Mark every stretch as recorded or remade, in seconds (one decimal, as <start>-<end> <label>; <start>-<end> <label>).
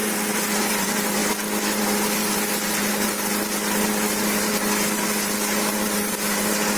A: 0.0-6.8 remade